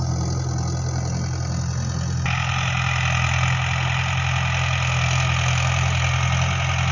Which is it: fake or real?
real